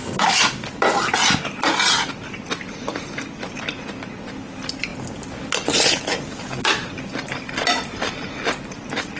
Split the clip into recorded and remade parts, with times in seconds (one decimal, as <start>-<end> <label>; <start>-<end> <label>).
0.0-9.2 recorded